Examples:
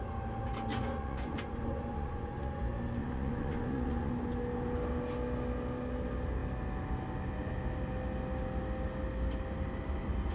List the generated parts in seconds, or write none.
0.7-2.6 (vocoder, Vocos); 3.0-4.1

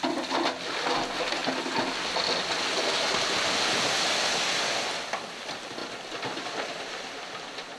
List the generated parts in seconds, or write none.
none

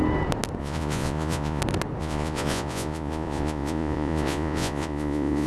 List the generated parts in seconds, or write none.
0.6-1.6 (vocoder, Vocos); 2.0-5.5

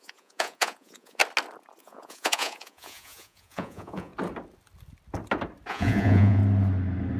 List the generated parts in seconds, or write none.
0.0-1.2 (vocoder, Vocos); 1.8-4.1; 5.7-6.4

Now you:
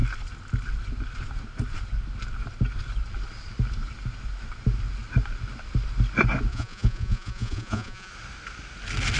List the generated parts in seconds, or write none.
6.5-8.1 (vocoder, Vocos)